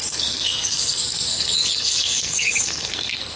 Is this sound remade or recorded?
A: remade